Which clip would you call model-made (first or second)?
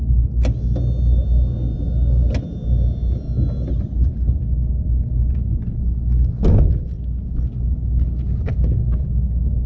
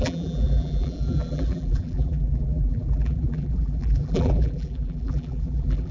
second